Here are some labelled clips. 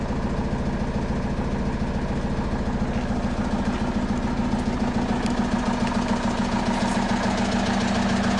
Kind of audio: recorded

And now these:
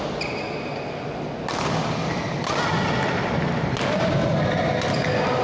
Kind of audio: recorded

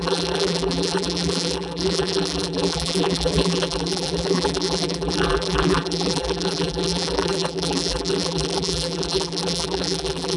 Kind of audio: remade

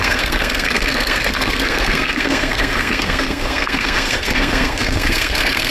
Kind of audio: remade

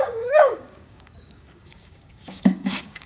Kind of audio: remade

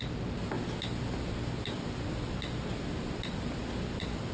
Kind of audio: recorded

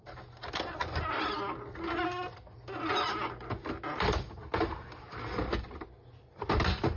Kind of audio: recorded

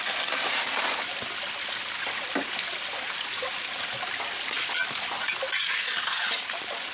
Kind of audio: recorded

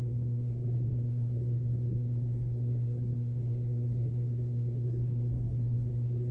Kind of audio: remade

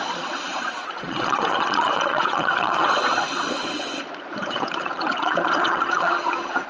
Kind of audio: remade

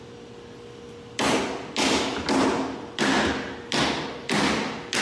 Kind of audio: recorded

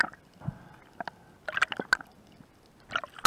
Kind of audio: recorded